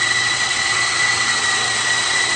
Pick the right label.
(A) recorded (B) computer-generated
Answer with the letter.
B